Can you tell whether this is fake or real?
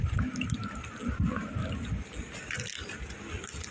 real